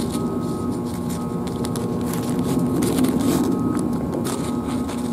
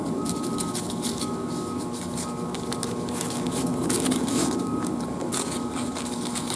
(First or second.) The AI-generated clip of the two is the second